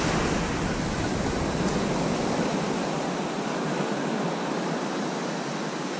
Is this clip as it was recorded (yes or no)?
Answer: yes